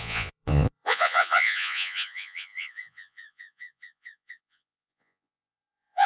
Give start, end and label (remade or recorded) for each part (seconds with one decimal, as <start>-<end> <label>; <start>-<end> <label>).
0.0-6.1 remade